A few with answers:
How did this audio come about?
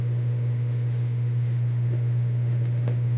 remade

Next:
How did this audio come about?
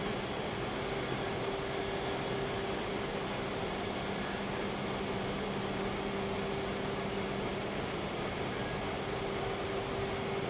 recorded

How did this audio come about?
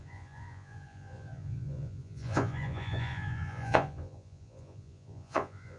remade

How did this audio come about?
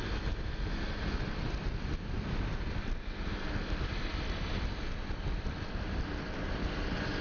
recorded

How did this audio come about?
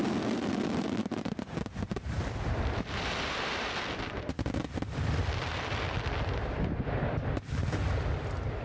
remade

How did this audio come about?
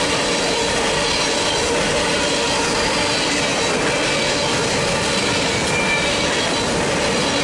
recorded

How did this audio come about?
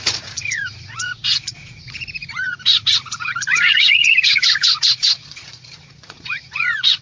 remade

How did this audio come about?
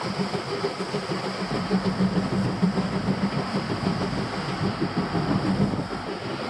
recorded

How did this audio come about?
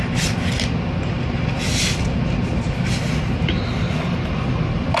recorded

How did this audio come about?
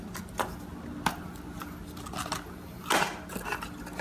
recorded